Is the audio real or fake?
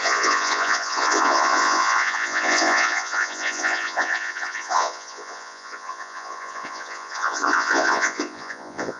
fake